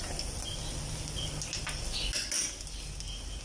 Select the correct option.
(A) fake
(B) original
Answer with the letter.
B